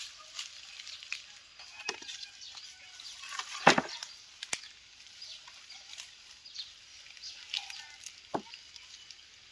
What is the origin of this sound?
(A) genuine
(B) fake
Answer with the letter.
A